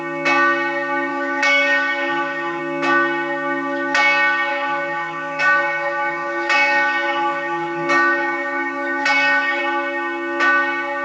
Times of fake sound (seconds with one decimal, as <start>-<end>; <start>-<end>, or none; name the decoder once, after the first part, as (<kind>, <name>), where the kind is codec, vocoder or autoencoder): 1.1-2.6 (codec, DAC); 4.5-9.6